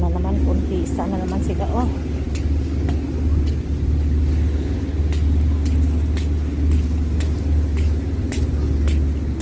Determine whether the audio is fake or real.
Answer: real